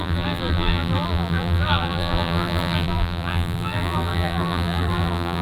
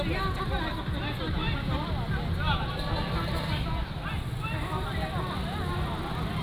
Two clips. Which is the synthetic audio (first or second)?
first